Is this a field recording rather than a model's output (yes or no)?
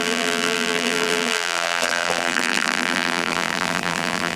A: no